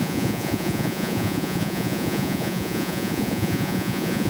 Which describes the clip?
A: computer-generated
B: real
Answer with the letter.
A